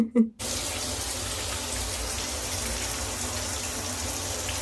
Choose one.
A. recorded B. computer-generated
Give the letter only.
A